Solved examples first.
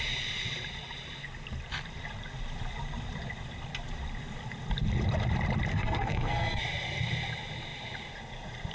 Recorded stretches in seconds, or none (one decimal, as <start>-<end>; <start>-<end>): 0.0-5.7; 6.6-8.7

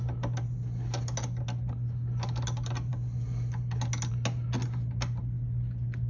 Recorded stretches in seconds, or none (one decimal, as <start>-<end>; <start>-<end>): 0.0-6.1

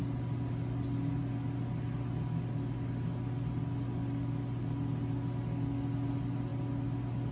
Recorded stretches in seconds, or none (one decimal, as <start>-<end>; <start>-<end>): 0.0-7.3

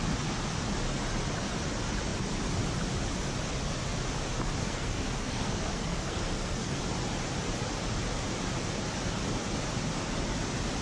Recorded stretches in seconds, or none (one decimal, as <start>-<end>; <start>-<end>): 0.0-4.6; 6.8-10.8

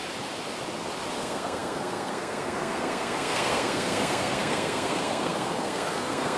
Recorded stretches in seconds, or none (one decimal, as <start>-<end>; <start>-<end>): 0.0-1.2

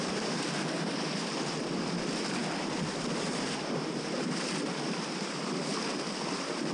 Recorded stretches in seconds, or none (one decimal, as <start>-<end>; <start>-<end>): 0.0-6.7

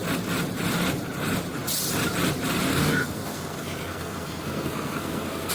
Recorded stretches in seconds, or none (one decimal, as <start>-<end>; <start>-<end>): 0.0-2.7